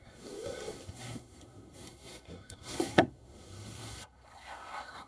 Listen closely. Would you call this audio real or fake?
fake